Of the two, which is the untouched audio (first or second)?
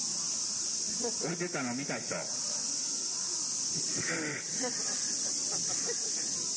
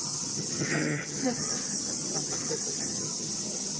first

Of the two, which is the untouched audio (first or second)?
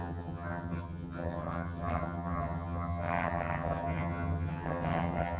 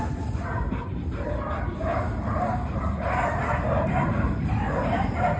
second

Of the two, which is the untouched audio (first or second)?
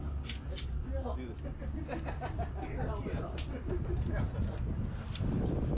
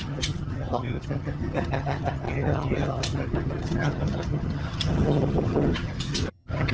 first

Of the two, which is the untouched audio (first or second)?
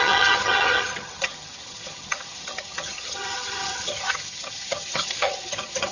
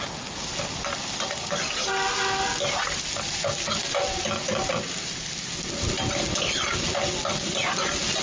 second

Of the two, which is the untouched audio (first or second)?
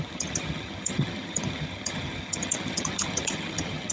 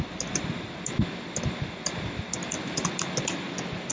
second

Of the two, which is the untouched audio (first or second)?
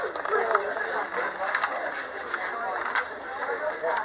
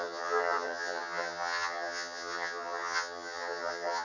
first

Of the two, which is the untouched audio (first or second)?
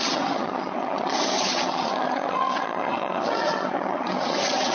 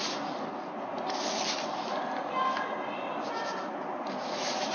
second